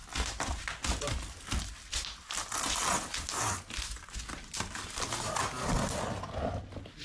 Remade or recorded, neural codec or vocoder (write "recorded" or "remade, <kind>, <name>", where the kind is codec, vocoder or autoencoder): recorded